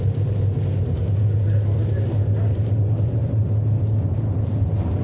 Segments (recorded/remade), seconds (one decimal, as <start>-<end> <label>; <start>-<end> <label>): 0.0-1.0 remade; 1.0-2.4 recorded; 2.4-3.2 remade; 3.2-4.4 recorded; 4.4-5.0 remade